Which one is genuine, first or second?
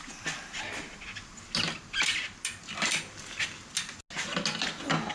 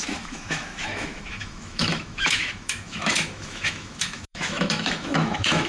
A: first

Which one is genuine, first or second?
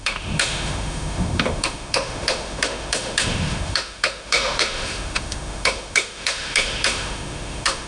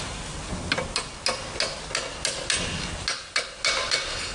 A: second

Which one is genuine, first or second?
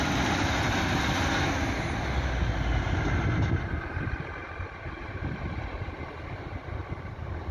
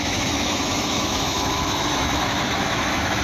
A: first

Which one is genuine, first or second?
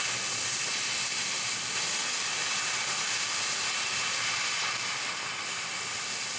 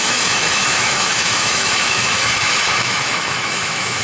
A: first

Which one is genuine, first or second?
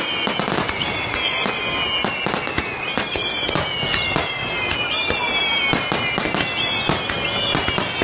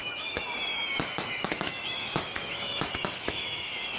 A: first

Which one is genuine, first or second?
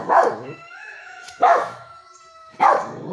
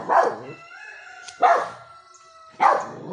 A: second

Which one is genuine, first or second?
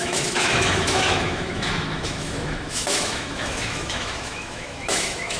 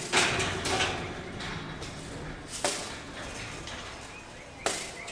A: second